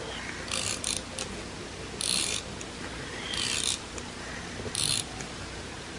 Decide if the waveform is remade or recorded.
recorded